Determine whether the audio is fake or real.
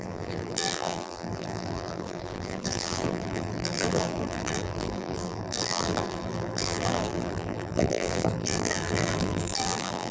fake